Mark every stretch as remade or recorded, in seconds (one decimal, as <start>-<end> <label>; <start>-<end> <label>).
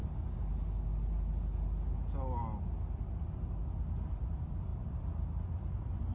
0.0-3.7 recorded; 3.7-6.1 remade